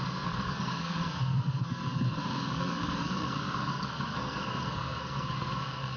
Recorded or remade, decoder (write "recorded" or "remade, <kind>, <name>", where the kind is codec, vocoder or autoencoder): remade, codec, SNAC